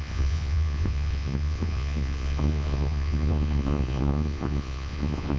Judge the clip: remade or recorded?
remade